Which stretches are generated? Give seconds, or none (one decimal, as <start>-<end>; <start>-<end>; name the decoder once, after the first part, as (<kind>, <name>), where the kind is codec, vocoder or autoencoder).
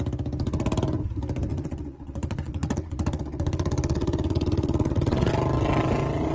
1.5-5.3 (vocoder, Vocos)